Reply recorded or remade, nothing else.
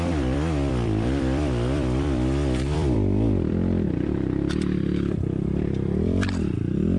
remade